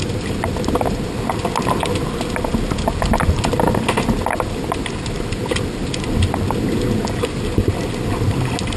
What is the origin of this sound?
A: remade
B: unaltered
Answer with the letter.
B